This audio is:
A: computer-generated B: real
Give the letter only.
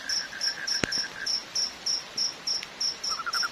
B